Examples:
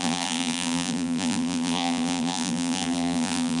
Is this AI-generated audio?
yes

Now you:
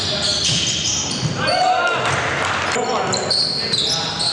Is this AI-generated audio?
no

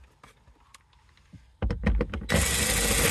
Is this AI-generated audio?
no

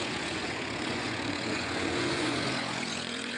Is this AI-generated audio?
yes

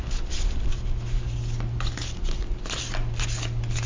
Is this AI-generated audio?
no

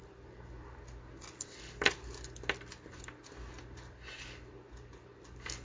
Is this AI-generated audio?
no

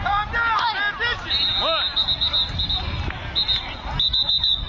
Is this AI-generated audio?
no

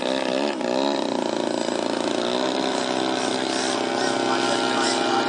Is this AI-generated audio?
no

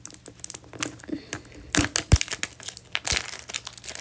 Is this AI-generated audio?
no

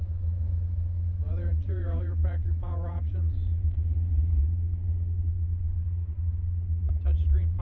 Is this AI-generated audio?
yes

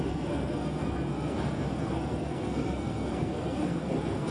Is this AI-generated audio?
yes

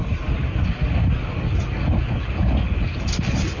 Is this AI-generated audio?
no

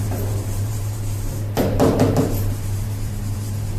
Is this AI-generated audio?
yes